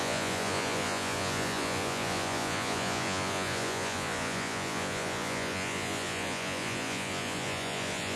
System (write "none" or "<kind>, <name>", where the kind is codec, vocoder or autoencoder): vocoder, Vocos